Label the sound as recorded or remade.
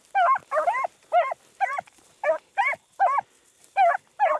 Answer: recorded